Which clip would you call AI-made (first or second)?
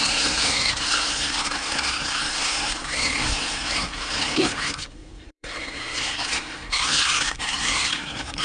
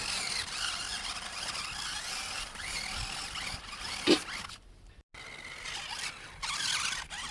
first